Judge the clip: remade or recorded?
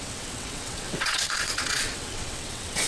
remade